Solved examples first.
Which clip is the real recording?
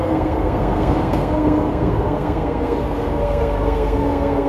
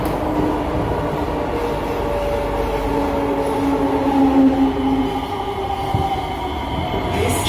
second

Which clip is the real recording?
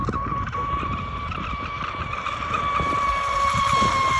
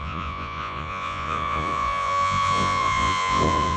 first